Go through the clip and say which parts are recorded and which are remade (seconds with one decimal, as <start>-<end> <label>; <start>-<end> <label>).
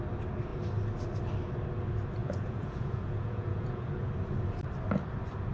0.0-2.2 recorded; 2.2-4.1 remade; 4.1-5.5 recorded